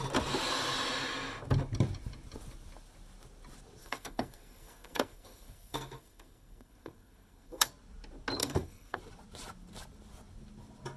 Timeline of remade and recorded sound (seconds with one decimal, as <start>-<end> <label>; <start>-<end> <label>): 0.0-3.8 recorded; 3.8-7.7 remade; 7.7-8.4 recorded; 8.4-9.0 remade; 9.0-11.0 recorded